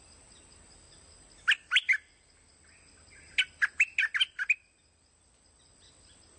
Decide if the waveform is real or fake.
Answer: real